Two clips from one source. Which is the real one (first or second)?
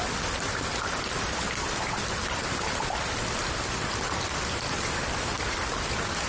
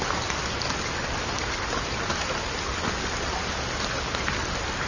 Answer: second